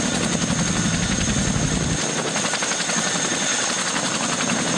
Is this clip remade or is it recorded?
recorded